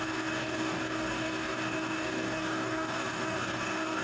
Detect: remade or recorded remade